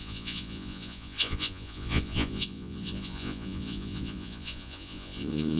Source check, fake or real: fake